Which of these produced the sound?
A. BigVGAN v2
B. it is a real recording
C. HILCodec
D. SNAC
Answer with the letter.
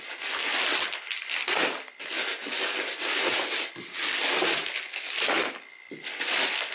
B